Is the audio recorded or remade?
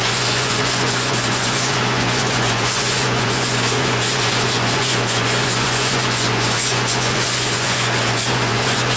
remade